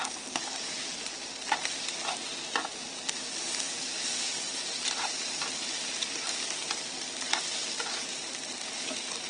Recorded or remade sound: recorded